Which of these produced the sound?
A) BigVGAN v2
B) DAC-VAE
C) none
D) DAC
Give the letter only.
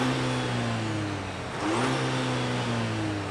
C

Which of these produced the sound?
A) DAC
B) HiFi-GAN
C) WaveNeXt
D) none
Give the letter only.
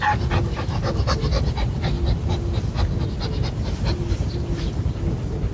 D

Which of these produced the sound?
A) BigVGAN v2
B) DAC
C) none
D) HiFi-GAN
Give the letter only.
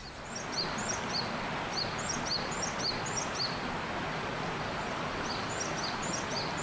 C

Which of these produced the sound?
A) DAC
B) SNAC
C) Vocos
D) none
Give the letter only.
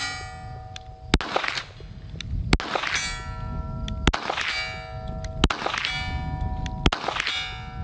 D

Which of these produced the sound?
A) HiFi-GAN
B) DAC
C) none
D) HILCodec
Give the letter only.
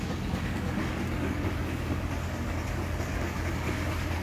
B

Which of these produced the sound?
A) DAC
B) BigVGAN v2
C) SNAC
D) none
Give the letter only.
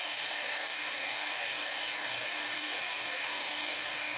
A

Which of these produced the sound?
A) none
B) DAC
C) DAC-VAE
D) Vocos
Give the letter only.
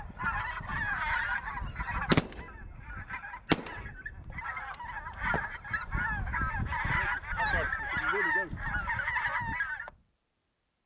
A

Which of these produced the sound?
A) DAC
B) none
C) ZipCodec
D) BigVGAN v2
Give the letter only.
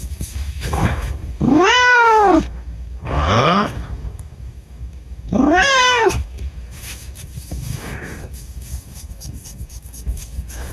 A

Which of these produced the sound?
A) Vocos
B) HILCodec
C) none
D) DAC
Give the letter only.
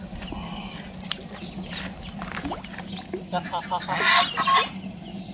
C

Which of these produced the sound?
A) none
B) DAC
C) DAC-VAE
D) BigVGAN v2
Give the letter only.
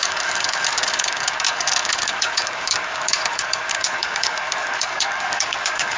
B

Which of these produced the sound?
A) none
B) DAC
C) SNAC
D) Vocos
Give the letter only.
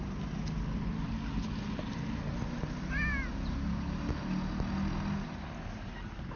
A